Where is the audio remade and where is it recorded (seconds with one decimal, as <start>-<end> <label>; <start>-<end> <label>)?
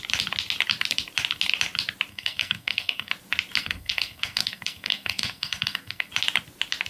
0.0-2.1 recorded; 2.1-3.1 remade; 3.1-3.6 recorded; 3.6-6.1 remade; 6.1-6.9 recorded